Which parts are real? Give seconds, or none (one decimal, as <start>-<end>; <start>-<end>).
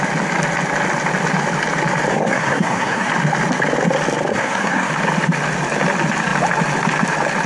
0.0-2.1; 3.1-4.3; 4.9-7.5